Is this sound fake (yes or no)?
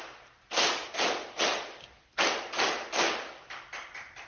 no